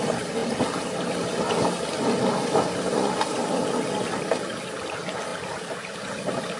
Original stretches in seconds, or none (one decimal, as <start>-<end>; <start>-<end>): 0.0-6.6